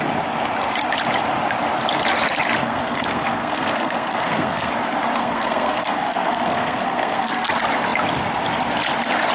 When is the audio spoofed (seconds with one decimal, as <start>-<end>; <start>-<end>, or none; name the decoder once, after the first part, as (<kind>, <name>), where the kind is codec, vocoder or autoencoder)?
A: 2.6-4.7 (codec, SNAC); 5.2-7.5